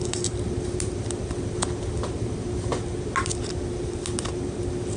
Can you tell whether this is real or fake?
real